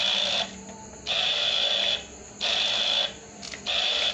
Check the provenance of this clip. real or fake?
real